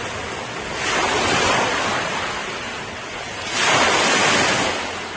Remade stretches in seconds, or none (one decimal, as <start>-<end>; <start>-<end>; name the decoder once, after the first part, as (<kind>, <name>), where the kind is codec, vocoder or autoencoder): 1.1-1.7 (vocoder, BigVGAN v2); 2.4-3.6